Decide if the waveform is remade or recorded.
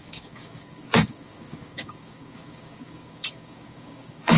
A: remade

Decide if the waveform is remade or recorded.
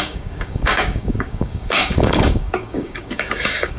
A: remade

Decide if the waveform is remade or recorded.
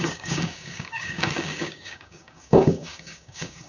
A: remade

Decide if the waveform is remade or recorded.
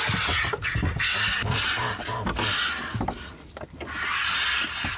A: recorded